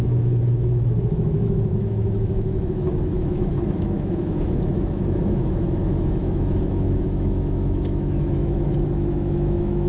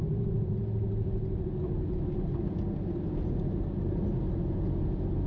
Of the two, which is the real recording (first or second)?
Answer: second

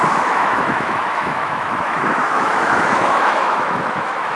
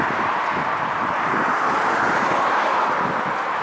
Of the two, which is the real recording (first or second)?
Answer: second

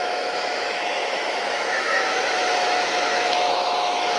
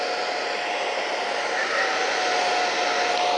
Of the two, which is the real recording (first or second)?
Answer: second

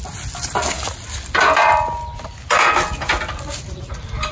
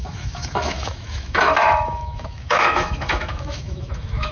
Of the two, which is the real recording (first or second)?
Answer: first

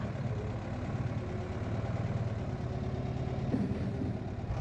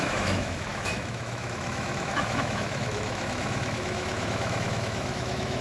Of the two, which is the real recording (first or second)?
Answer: first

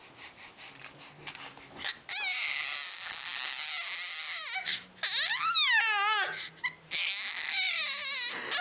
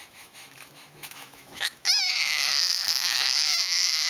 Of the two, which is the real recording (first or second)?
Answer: first